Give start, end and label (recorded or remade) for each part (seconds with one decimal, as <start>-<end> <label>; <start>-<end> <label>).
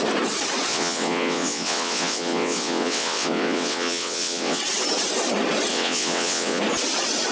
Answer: 0.0-0.7 recorded; 0.7-4.6 remade; 4.6-5.7 recorded; 5.7-6.6 remade; 6.6-7.3 recorded